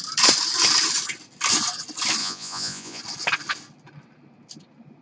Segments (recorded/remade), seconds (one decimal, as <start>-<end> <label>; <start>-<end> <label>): 0.0-2.2 recorded; 2.2-3.0 remade; 3.0-5.0 recorded